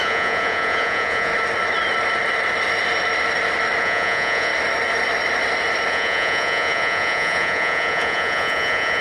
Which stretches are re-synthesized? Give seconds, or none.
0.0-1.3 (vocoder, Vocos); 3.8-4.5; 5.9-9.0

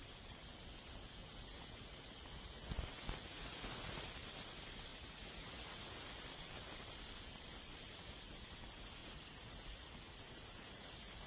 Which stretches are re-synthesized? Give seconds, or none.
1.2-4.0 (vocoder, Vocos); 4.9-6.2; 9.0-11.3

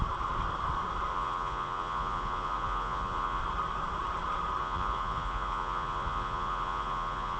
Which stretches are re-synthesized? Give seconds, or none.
1.1-3.4 (vocoder, Vocos); 4.6-7.4

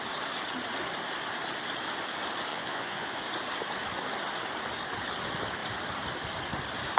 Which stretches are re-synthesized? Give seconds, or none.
2.5-3.2 (vocoder, Vocos)

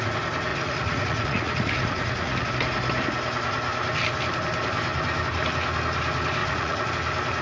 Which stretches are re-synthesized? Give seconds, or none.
0.5-2.5 (vocoder, Vocos); 6.4-6.9

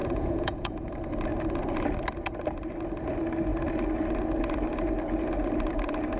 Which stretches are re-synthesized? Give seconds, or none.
0.0-0.9 (vocoder, Vocos)